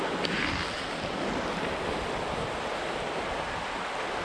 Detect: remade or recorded recorded